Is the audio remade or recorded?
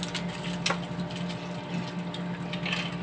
recorded